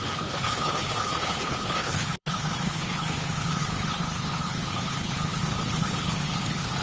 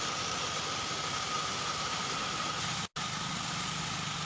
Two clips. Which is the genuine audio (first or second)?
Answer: second